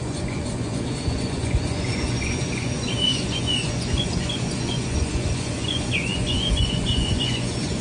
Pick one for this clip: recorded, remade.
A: remade